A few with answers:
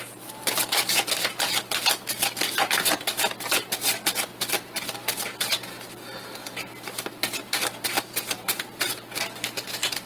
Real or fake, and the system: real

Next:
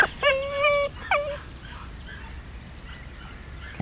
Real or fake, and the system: real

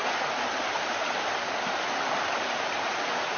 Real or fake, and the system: real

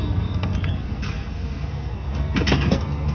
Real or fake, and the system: fake, codec, SNAC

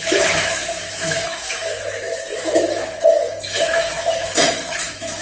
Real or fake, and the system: fake, autoencoder, DAC-VAE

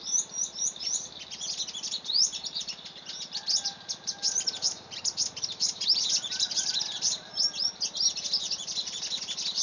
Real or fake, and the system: real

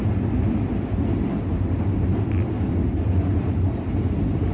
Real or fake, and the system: fake, vocoder, BigVGAN v2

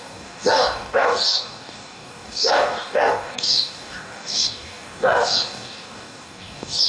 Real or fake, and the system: fake, codec, DAC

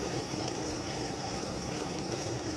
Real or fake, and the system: fake, codec, SNAC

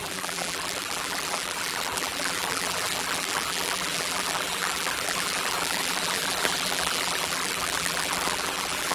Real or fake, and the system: fake, vocoder, BigVGAN v2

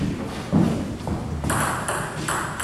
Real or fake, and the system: real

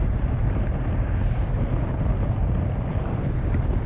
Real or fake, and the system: real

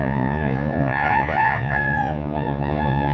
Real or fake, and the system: fake, vocoder, Vocos